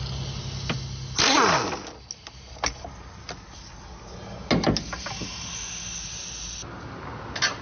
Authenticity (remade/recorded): recorded